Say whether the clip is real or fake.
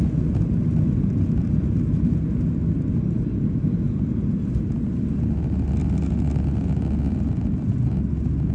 real